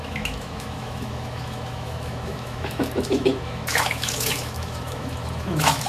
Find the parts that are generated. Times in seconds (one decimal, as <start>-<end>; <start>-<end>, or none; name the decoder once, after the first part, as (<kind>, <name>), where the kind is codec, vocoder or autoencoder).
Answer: 0.0-5.9 (autoencoder, DAC-VAE)